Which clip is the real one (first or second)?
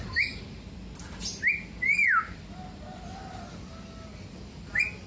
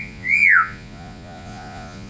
first